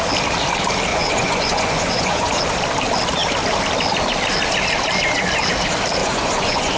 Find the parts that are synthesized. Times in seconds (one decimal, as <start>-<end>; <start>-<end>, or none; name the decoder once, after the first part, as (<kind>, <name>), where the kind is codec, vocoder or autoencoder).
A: 0.9-2.4 (vocoder, Vocos); 6.0-6.8